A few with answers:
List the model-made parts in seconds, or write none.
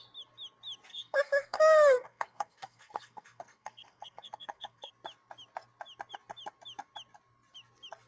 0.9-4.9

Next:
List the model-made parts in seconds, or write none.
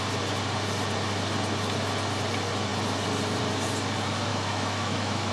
4.3-5.3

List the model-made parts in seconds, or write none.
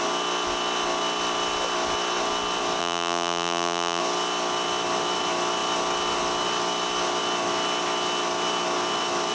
2.8-4.0